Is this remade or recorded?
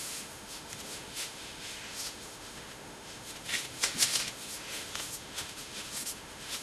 remade